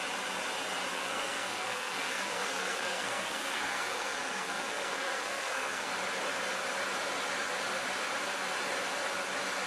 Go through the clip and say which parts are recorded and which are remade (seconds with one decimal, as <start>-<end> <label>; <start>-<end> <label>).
0.0-0.9 recorded; 0.9-5.9 remade; 5.9-9.7 recorded